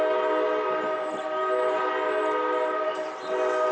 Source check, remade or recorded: recorded